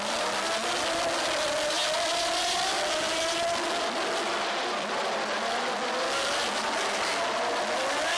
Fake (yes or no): no